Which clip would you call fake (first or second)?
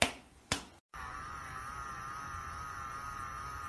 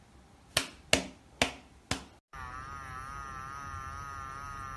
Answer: first